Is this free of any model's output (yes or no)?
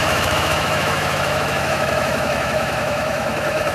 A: no